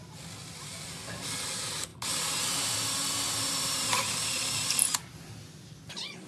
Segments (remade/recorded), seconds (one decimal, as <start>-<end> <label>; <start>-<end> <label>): 0.0-6.3 recorded